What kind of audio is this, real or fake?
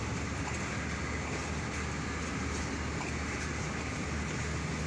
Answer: real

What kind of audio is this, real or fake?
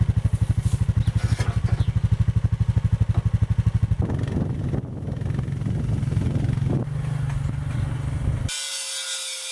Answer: real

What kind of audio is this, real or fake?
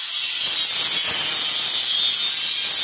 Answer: real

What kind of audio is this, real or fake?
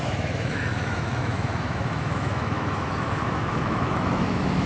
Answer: fake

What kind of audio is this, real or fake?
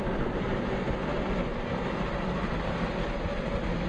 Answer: real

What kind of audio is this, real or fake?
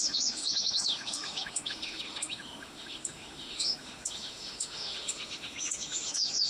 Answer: fake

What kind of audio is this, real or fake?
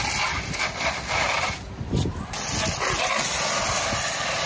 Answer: real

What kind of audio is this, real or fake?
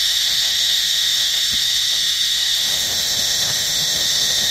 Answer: fake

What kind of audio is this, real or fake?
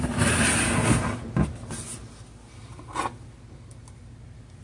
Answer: real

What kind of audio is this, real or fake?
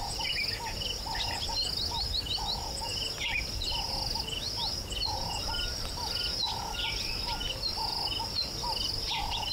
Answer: real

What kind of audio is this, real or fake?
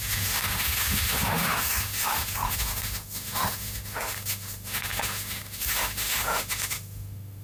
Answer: fake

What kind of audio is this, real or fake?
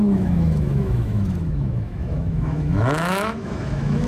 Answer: fake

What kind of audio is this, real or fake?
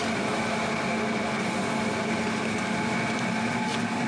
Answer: real